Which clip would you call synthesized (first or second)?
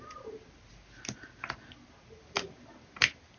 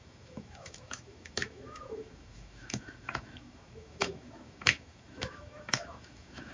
second